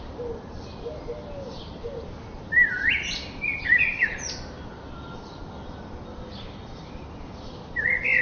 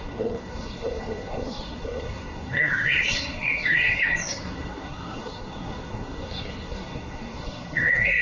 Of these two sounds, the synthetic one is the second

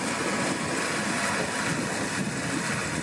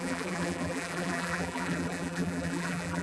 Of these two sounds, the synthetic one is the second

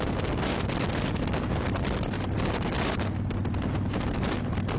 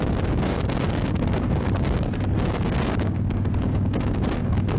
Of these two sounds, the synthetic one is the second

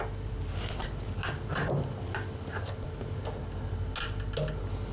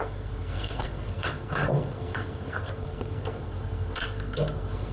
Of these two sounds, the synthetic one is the second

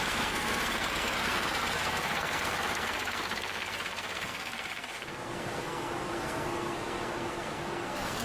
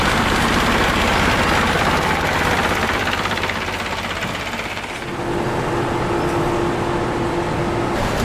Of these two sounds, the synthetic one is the first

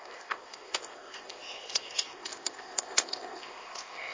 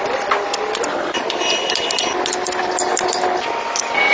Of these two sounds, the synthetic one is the first